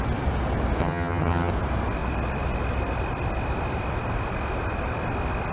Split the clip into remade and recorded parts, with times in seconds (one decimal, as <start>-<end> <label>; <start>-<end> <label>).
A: 0.0-0.8 recorded; 0.8-1.5 remade; 1.5-5.5 recorded